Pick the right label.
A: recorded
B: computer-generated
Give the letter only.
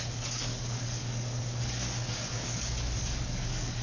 B